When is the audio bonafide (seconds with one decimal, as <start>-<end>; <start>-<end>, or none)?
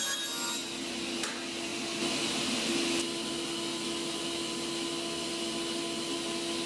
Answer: 0.0-6.7